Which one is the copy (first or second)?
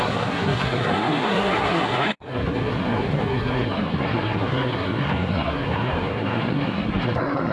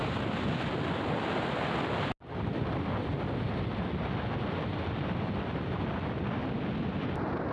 first